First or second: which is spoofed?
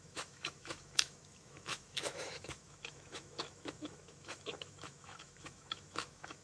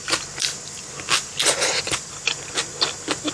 first